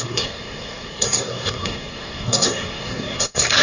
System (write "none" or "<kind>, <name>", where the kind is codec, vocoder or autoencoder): codec, SNAC